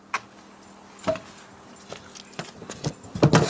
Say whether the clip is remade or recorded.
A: recorded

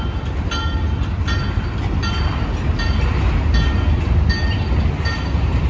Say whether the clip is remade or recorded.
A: recorded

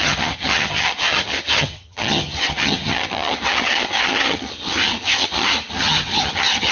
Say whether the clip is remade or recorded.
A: remade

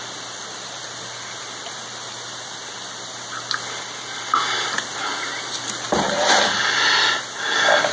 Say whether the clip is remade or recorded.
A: recorded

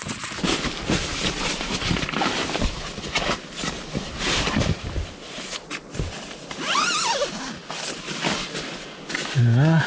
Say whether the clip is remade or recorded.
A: recorded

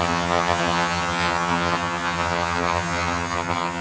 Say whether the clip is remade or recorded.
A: remade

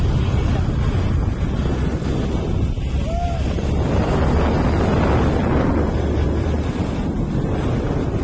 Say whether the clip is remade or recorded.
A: recorded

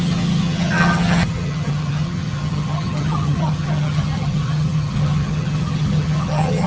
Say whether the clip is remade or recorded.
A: remade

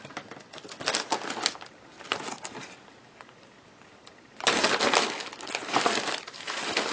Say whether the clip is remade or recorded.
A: recorded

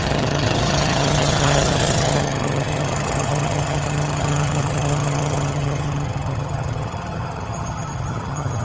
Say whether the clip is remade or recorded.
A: remade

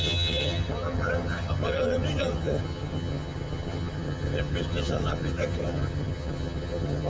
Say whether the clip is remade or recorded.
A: remade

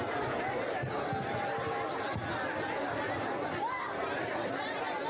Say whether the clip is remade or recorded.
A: recorded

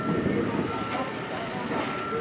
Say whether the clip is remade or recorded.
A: recorded